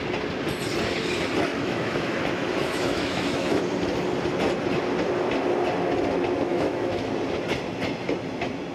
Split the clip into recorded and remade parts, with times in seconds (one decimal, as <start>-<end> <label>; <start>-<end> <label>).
0.0-1.5 recorded; 1.5-2.2 remade; 2.2-2.6 recorded; 2.6-3.6 remade; 3.6-6.5 recorded; 6.5-7.1 remade; 7.1-8.7 recorded